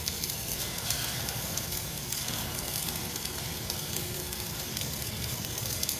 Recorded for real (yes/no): no